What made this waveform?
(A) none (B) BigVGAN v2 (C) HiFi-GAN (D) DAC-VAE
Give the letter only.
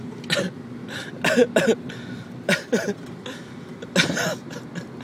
A